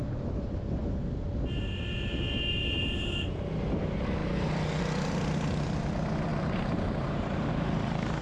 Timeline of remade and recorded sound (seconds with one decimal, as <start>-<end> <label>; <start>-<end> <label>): 0.0-6.3 recorded; 6.3-7.5 remade; 7.5-8.2 recorded